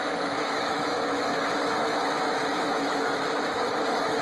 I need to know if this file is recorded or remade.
remade